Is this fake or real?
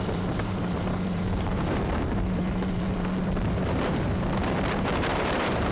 fake